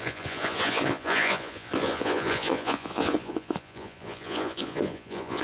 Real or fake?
fake